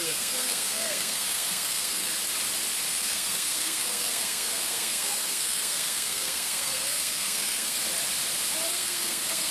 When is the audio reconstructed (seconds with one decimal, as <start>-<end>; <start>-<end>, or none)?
0.0-2.1; 2.9-7.8; 8.7-9.5